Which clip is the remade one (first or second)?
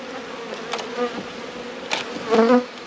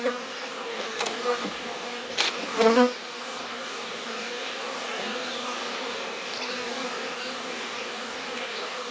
second